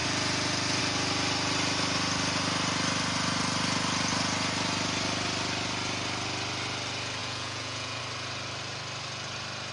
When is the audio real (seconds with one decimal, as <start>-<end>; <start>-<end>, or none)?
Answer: 0.0-7.2; 8.0-9.7